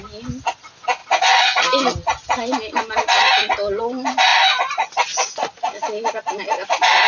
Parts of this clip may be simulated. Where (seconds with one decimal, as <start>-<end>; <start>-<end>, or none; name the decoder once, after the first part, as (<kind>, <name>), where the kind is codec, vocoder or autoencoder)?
none